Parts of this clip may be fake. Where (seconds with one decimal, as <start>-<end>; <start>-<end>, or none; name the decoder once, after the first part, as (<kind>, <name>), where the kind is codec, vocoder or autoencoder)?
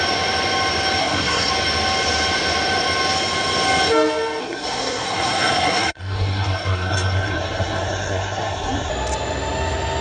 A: 1.0-1.5 (codec, SNAC); 4.4-8.9